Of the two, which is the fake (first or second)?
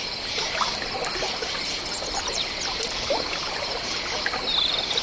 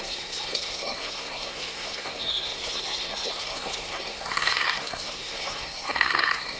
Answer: second